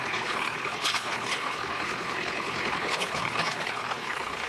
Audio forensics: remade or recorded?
remade